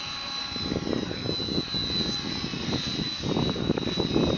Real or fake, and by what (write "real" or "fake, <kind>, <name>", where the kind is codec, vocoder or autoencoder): real